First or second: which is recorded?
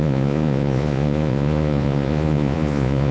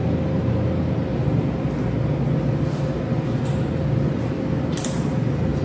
second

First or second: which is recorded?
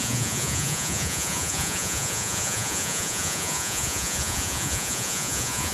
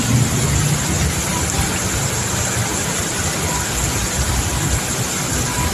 second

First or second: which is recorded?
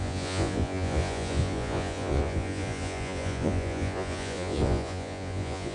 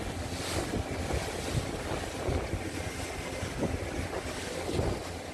second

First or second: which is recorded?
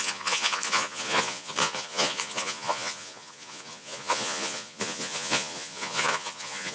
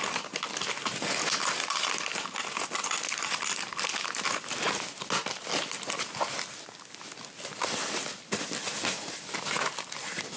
second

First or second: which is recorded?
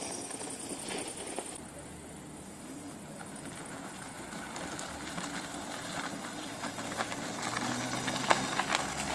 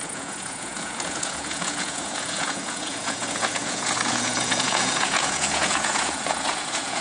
first